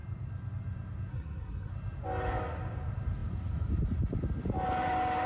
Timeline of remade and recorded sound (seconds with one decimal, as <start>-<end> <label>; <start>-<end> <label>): 0.0-1.1 recorded; 1.1-1.7 remade; 1.7-5.3 recorded